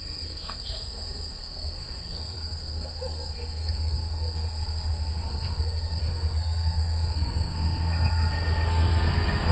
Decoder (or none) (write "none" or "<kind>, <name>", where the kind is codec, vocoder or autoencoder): codec, SNAC